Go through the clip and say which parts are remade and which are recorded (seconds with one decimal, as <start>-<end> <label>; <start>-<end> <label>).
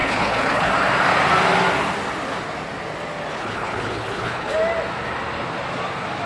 0.0-0.7 remade; 0.7-3.3 recorded; 3.3-4.5 remade; 4.5-6.3 recorded